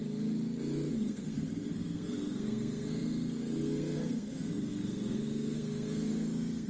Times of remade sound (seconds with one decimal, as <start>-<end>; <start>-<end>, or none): 0.9-6.7